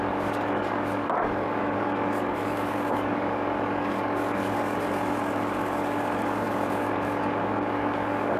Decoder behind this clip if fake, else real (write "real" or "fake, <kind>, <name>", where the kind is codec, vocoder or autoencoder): fake, codec, DAC